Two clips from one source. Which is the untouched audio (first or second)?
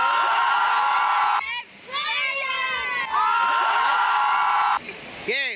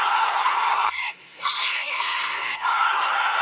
first